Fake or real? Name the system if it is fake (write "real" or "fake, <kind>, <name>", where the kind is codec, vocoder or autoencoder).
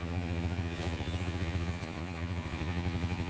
fake, vocoder, Vocos